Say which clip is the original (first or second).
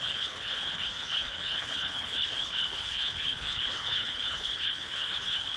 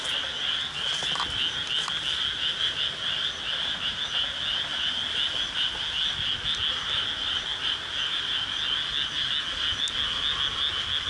second